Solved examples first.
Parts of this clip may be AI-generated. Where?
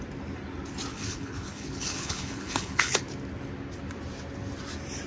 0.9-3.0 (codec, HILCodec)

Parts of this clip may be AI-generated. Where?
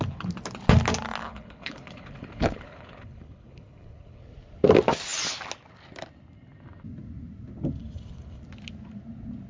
1.2-4.2 (codec, HILCodec); 7.8-8.4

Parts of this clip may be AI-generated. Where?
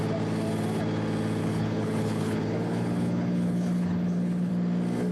1.4-4.5 (codec, HILCodec)